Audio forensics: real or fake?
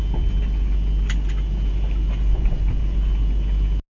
real